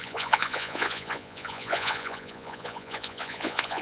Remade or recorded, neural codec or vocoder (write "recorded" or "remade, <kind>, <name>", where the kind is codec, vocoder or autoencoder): remade, vocoder, Vocos